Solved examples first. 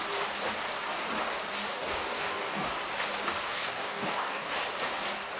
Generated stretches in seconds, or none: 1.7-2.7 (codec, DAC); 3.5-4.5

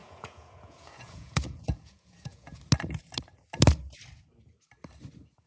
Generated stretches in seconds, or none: 0.0-2.6 (vocoder, Vocos)

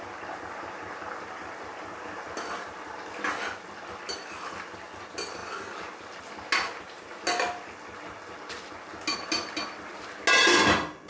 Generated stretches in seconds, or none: none

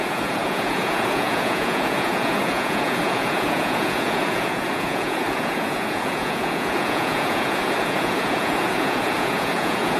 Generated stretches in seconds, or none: 0.0-10.0 (vocoder, Vocos)